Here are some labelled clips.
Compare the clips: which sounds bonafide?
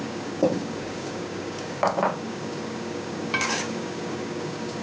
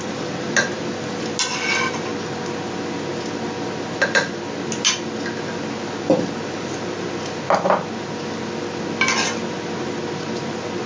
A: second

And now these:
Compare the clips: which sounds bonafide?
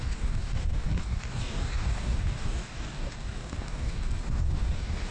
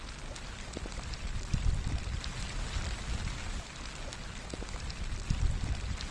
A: second